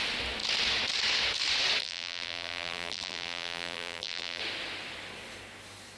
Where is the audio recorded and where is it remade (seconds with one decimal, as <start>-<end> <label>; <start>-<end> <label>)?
0.0-1.8 recorded; 1.8-4.4 remade; 4.4-6.0 recorded